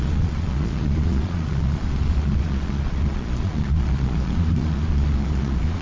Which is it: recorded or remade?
remade